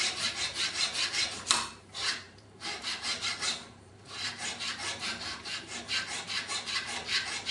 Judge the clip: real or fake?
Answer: fake